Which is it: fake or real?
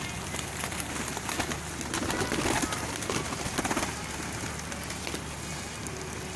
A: real